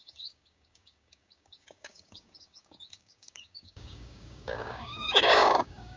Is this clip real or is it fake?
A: fake